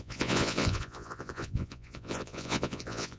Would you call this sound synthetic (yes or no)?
yes